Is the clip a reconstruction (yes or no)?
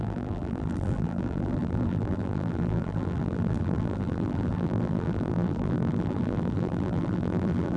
yes